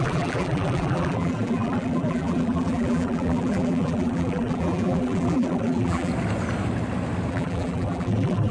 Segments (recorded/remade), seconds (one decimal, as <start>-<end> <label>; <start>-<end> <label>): 0.0-6.1 remade; 6.1-7.3 recorded; 7.3-8.5 remade